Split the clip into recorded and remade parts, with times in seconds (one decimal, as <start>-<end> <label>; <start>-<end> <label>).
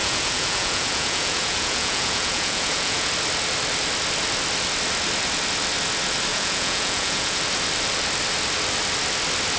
0.0-3.1 remade; 3.1-6.3 recorded; 6.3-7.4 remade; 7.4-9.6 recorded